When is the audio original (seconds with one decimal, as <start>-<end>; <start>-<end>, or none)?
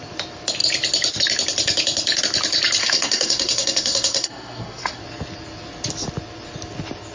0.0-2.8; 5.0-7.1